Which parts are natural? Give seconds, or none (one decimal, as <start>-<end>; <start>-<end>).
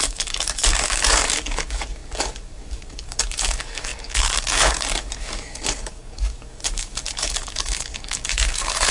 none